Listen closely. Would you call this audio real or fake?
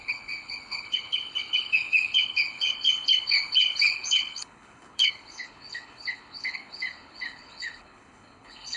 fake